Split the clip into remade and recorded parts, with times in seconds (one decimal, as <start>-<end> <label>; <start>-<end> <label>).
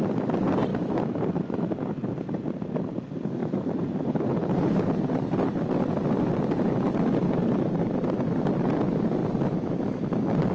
0.0-0.7 recorded; 0.7-2.1 remade; 2.1-3.4 recorded; 3.4-5.5 remade; 5.5-7.2 recorded; 7.2-8.7 remade; 8.7-9.2 recorded; 9.2-9.8 remade; 9.8-10.5 recorded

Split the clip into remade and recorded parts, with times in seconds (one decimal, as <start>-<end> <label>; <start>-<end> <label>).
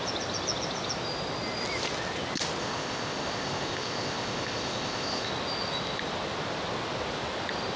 0.0-2.6 recorded; 2.6-5.3 remade; 5.3-7.8 recorded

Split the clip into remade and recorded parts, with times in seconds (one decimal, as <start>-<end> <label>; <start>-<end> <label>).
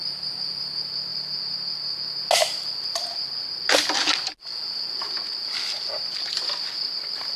0.0-4.5 recorded; 4.5-5.1 remade; 5.1-7.4 recorded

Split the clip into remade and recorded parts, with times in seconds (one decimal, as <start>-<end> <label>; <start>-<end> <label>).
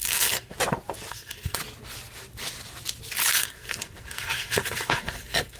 0.0-0.5 remade; 0.5-1.1 recorded; 1.1-1.6 remade; 1.6-3.3 recorded; 3.3-5.6 remade